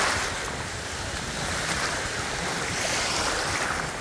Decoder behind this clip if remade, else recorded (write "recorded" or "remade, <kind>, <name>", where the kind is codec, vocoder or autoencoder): recorded